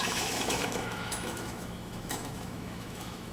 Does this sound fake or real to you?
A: fake